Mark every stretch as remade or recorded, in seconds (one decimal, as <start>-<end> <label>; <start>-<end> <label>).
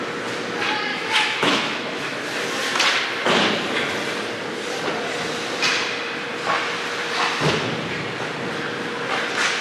0.0-0.9 recorded; 0.9-2.2 remade; 2.2-9.6 recorded